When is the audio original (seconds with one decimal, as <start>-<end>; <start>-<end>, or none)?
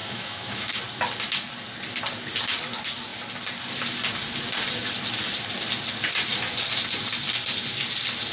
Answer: 0.8-8.3